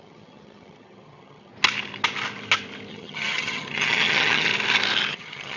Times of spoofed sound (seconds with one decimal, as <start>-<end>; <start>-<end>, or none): 0.0-1.5; 2.9-4.5; 5.1-5.6